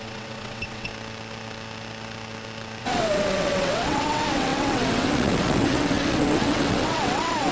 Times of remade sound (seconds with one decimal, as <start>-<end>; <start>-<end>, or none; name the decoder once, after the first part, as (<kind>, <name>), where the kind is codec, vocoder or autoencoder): 0.0-0.9 (vocoder, WaveNeXt); 2.8-7.5